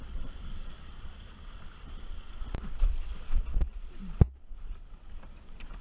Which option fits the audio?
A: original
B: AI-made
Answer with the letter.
A